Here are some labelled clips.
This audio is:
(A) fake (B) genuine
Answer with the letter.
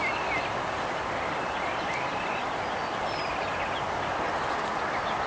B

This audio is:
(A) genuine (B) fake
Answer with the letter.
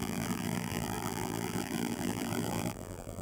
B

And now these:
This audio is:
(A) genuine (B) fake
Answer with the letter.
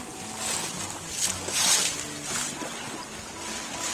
A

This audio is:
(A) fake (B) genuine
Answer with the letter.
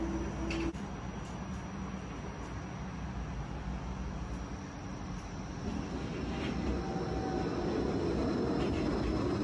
B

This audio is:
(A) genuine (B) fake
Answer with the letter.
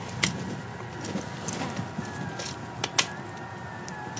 A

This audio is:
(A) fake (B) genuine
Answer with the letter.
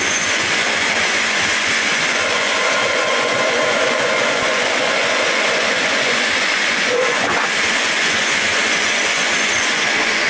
A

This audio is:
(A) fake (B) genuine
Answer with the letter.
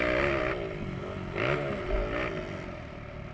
B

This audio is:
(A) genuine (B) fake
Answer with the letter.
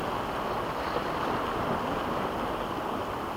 A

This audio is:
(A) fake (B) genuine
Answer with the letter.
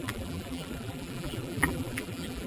A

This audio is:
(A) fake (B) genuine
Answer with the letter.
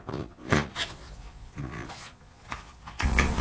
A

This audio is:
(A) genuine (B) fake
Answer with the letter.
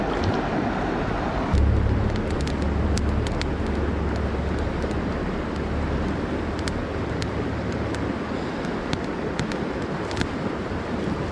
A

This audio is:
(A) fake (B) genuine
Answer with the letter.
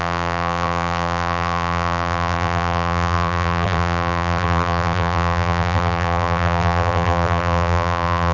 A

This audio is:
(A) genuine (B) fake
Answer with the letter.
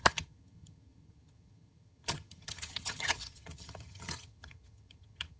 B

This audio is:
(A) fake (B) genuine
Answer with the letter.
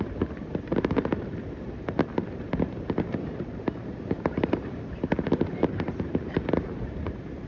A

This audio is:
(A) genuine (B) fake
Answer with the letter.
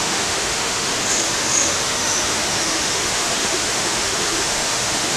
B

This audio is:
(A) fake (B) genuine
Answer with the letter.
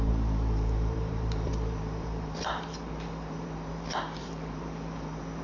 A